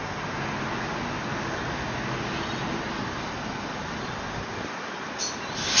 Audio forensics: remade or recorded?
recorded